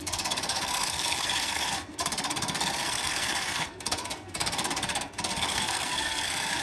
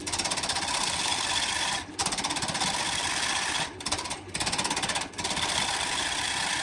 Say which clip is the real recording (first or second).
second